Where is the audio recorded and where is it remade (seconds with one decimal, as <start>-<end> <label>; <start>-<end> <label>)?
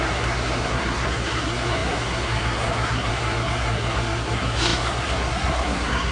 0.0-6.1 remade